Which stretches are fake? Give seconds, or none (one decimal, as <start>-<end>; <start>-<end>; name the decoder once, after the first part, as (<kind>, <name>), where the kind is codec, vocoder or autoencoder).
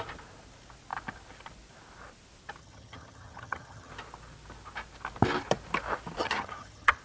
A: 2.6-3.9 (vocoder, HiFi-GAN); 6.2-7.0